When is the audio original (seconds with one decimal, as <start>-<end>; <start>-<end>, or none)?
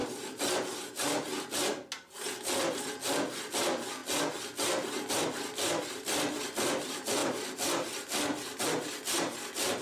0.0-9.8